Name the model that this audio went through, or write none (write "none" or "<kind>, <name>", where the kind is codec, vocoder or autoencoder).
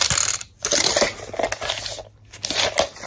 none